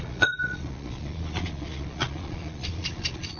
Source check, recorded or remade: remade